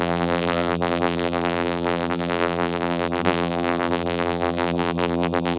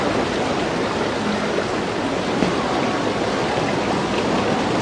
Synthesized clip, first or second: first